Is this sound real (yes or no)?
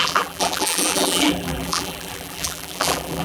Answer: no